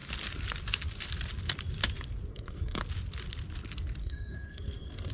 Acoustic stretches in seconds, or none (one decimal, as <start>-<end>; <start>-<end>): 0.0-2.3; 2.8-4.0